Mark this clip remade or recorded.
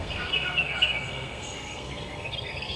remade